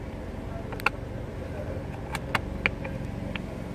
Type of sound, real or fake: real